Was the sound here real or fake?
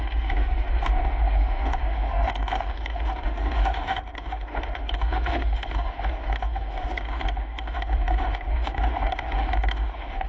fake